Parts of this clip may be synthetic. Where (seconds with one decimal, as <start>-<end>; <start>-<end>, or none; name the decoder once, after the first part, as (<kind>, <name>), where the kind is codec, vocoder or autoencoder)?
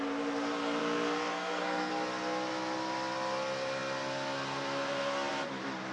0.8-1.9 (codec, SNAC)